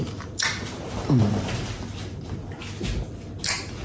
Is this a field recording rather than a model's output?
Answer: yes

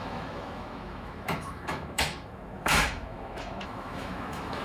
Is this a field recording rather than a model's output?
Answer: no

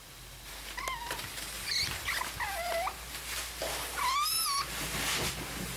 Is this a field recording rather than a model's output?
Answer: yes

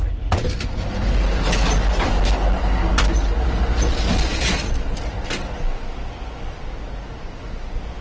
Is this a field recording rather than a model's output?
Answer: yes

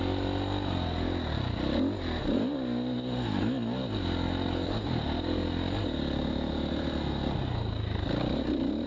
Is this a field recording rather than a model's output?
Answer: yes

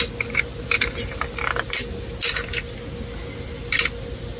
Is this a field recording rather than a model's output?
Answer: yes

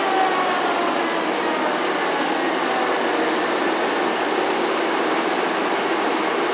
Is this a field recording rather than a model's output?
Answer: yes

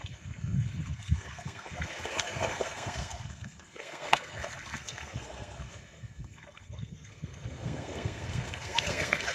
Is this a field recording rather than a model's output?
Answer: no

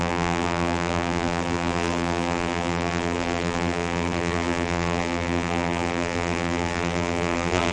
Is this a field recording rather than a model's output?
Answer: no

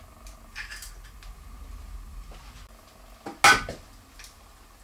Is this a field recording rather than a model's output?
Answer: yes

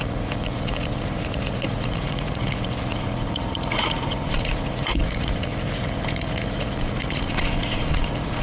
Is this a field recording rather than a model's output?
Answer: no